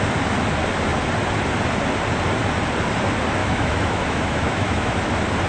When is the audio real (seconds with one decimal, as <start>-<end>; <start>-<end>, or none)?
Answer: 0.0-3.4; 5.0-5.5